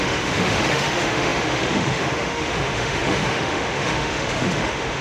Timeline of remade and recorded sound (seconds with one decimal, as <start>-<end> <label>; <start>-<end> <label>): 0.0-5.0 remade